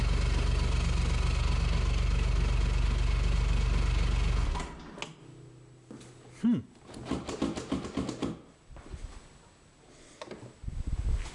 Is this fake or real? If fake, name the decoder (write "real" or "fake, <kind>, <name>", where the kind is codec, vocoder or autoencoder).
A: real